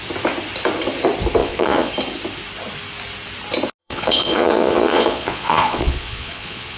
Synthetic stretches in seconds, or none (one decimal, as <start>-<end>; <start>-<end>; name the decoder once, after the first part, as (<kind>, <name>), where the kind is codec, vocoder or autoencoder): 1.4-1.9 (vocoder, Vocos); 3.8-6.8